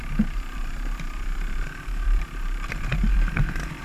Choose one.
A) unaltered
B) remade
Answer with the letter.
B